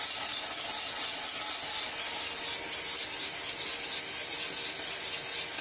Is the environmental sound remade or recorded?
recorded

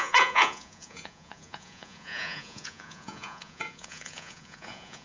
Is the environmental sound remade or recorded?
remade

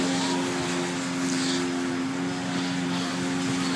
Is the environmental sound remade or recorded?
recorded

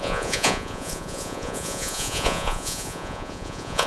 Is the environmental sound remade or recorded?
remade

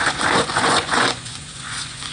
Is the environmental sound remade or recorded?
remade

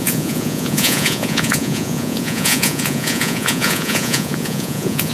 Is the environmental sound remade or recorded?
remade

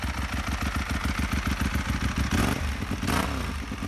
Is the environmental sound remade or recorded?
recorded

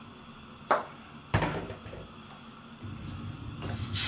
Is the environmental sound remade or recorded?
recorded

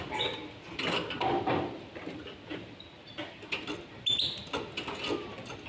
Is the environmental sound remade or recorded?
recorded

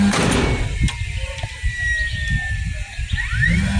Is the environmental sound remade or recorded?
recorded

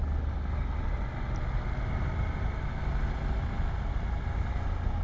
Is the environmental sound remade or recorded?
recorded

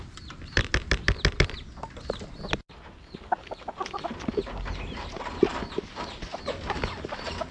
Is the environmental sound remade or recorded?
recorded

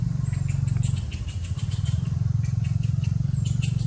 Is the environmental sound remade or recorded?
recorded